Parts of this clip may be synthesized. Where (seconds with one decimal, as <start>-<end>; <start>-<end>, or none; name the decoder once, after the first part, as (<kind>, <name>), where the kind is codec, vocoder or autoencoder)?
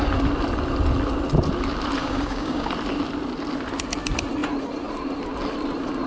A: 2.0-2.7 (codec, DAC)